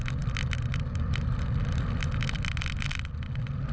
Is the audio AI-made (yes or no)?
no